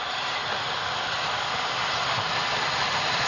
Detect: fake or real real